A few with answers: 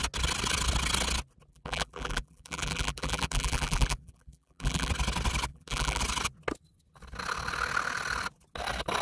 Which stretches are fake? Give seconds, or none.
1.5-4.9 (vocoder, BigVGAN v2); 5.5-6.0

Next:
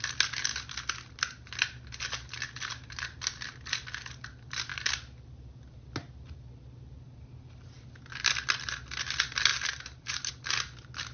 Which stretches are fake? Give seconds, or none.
9.5-10.3 (vocoder, BigVGAN v2)

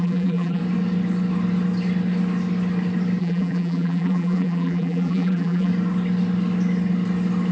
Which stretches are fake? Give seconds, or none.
0.0-0.6 (vocoder, BigVGAN v2); 3.2-5.7

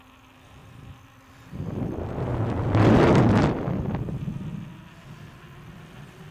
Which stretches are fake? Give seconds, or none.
0.6-3.2 (vocoder, BigVGAN v2)

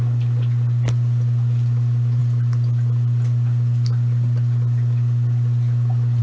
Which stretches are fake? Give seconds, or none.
none

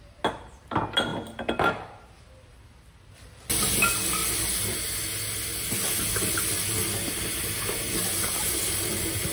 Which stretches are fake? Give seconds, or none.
none

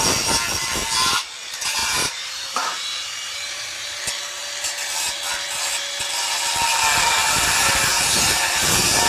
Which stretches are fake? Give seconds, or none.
1.8-4.0 (vocoder, BigVGAN v2)